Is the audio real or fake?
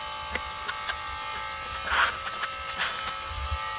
real